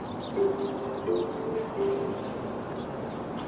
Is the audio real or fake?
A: fake